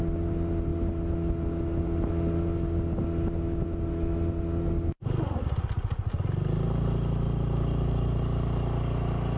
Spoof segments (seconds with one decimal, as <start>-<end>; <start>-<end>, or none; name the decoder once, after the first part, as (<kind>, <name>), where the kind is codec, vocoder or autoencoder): none